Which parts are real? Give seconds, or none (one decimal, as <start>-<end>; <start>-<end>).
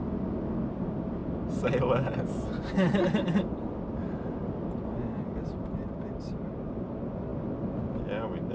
0.0-8.5